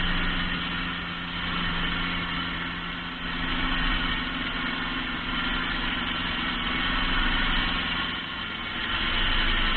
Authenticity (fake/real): real